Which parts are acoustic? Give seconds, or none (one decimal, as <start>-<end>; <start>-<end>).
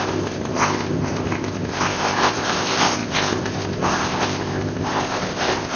none